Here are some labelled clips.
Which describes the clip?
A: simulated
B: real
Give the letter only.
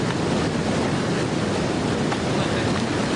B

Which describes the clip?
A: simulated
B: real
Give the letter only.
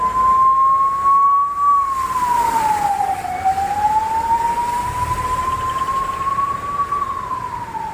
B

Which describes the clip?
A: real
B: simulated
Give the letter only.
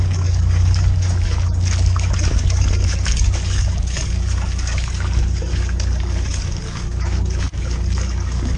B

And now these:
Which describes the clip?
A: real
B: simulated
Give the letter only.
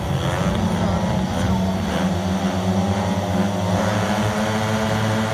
A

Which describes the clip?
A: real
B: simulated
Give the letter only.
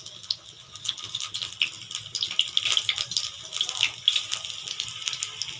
A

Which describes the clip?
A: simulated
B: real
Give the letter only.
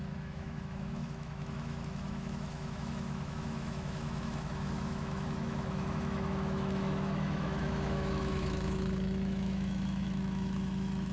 A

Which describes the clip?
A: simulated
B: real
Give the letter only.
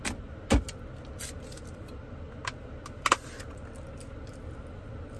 B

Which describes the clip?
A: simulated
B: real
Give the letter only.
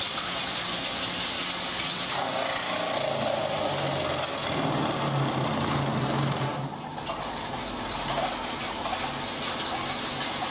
B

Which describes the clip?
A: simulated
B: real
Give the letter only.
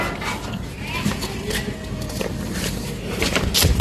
B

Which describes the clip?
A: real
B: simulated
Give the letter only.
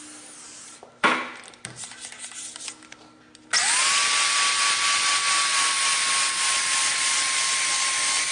A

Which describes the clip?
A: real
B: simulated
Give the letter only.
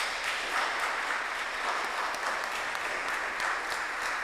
A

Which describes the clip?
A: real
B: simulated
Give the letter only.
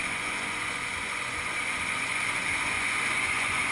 B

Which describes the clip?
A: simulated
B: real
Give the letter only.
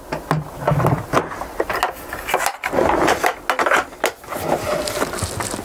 B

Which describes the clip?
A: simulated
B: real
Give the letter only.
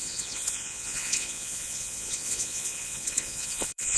A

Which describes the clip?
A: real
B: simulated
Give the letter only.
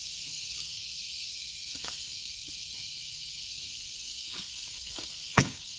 B